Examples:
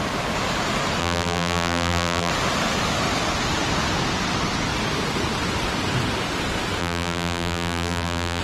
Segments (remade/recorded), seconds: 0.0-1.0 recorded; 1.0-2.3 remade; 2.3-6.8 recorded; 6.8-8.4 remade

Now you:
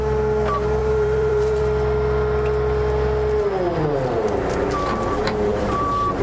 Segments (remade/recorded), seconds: 0.0-0.8 recorded; 0.8-1.6 remade; 1.6-5.5 recorded; 5.5-6.2 remade